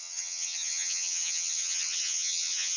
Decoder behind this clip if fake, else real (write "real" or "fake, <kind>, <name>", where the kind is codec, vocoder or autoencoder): fake, vocoder, HiFi-GAN